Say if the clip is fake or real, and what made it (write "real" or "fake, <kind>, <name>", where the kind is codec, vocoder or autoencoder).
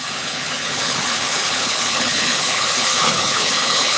fake, codec, HILCodec